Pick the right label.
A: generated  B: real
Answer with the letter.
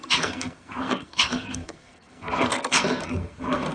A